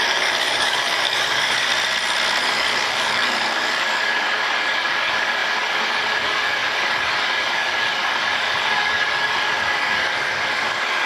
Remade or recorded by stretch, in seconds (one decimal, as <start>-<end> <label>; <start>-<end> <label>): 0.0-1.7 remade; 1.7-2.4 recorded; 2.4-11.1 remade